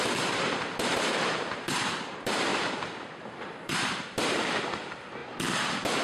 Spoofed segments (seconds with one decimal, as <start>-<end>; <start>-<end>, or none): 0.0-6.0